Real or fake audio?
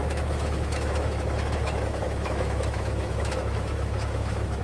fake